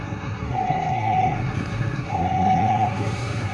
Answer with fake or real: fake